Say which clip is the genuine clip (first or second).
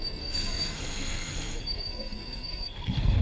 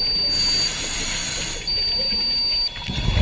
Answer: second